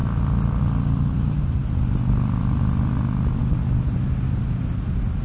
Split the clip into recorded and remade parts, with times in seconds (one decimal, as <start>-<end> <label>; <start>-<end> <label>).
0.0-5.2 recorded